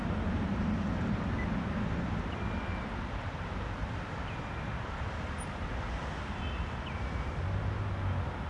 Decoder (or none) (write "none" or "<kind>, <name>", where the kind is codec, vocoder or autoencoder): none